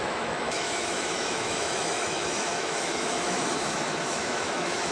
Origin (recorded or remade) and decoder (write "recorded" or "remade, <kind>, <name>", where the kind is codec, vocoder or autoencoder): remade, autoencoder, DAC-VAE